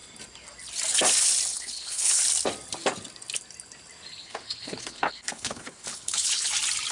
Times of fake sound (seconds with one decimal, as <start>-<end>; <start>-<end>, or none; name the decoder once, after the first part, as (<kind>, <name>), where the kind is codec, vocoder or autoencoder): 1.5-2.2 (codec, HILCodec); 4.2-6.5